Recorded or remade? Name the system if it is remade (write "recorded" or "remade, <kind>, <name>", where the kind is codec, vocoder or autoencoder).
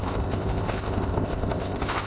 remade, codec, ZipCodec